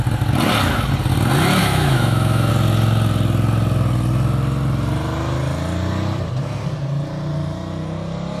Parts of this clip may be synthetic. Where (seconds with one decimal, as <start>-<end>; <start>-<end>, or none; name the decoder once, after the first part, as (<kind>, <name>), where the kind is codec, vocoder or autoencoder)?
1.6-2.5 (autoencoder, DAC-VAE)